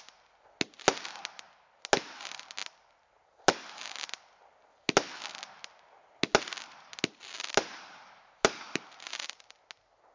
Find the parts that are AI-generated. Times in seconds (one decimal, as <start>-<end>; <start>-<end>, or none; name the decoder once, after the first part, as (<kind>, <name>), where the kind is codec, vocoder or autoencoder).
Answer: none